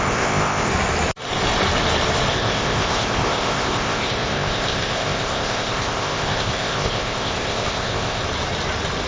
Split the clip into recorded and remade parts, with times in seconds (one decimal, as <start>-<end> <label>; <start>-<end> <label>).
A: 0.0-0.7 remade; 0.7-2.3 recorded; 2.3-8.2 remade; 8.2-9.1 recorded